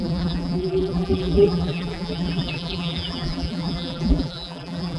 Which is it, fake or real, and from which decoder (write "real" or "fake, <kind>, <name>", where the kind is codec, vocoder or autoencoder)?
fake, vocoder, BigVGAN v2